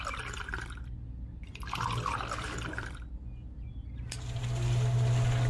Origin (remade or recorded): recorded